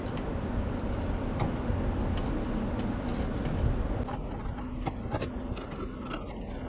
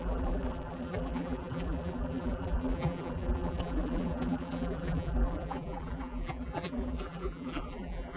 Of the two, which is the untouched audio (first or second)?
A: first